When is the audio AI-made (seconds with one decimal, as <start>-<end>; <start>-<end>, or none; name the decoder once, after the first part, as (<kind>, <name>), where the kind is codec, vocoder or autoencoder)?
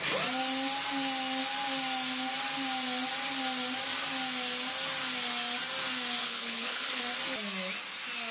6.2-7.0 (codec, HILCodec)